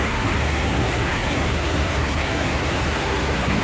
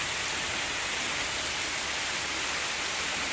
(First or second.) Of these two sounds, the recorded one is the second